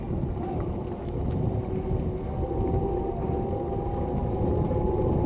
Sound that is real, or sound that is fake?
real